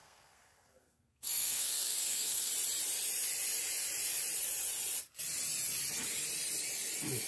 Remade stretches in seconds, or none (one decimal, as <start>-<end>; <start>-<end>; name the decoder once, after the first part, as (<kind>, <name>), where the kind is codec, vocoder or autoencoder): 0.0-2.5 (codec, SNAC)